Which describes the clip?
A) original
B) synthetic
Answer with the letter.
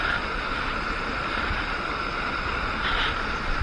A